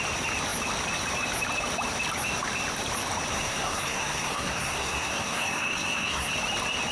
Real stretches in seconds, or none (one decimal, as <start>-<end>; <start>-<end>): 0.0-3.3; 6.3-6.9